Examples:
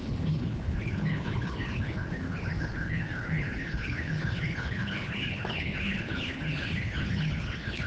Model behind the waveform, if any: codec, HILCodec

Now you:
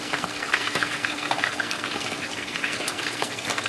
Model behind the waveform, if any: codec, SNAC